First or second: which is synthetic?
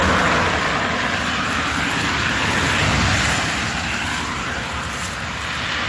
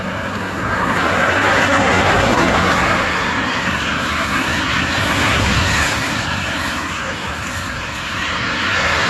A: second